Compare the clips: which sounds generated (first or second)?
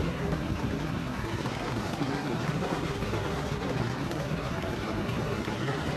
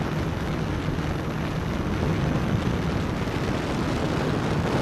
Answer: first